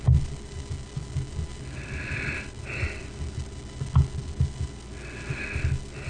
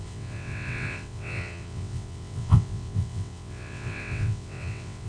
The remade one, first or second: second